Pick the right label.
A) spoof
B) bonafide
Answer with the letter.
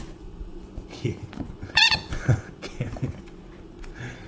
A